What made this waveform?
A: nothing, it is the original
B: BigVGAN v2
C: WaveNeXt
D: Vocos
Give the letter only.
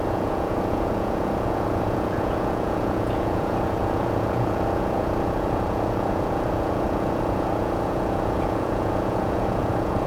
D